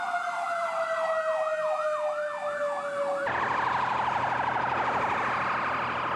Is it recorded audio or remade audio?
recorded